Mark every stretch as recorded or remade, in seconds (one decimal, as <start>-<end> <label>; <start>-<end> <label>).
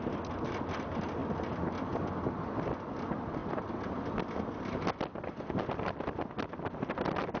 0.0-7.4 recorded